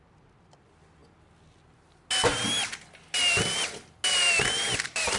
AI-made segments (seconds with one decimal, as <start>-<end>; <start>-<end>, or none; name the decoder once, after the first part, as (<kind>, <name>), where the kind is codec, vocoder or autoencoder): none